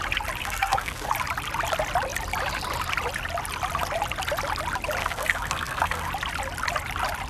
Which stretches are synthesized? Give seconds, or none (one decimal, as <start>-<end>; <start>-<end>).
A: 0.4-1.1; 5.0-6.1